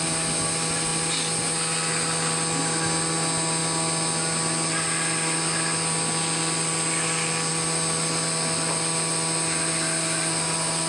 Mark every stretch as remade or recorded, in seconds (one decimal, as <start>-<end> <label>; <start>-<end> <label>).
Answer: 0.0-10.9 recorded